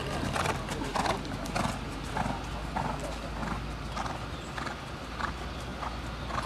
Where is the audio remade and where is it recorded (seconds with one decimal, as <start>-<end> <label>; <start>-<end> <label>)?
0.0-6.5 recorded